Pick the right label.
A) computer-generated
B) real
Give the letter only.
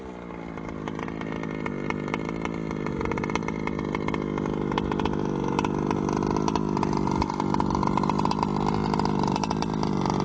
B